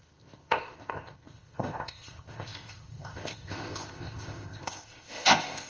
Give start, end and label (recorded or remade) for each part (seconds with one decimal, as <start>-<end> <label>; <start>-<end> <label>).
0.0-5.7 remade